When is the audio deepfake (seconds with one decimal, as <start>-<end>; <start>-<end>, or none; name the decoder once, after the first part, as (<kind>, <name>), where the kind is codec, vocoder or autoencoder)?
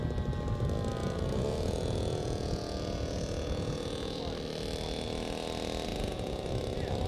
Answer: 1.0-4.2 (vocoder, Vocos); 5.9-6.4